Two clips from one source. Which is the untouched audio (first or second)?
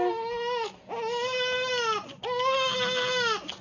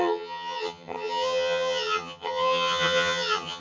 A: first